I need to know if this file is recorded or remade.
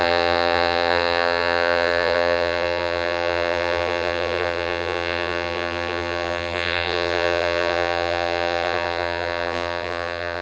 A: remade